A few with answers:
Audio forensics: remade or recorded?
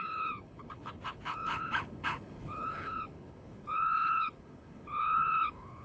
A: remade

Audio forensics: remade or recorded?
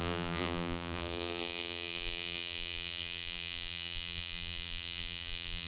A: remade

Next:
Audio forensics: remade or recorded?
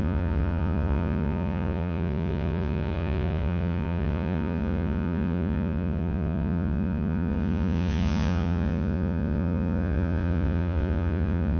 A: remade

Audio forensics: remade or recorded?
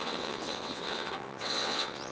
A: remade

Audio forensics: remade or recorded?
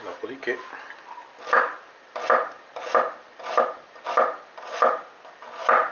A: recorded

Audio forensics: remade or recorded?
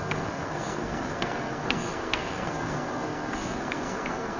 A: remade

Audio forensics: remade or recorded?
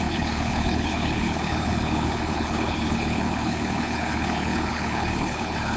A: remade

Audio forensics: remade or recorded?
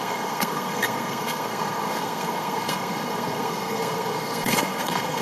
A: remade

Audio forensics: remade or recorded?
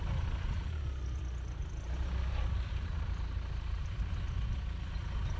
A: recorded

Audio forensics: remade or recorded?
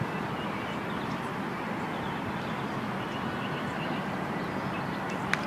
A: recorded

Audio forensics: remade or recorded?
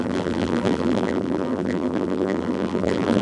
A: remade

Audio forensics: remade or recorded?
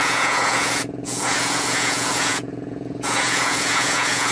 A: remade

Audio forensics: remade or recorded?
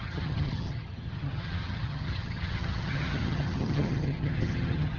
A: remade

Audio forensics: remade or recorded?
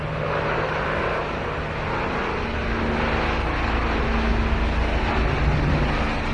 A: recorded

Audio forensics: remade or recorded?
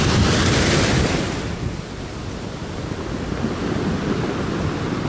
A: recorded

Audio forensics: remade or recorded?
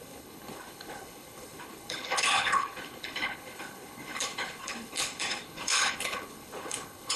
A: remade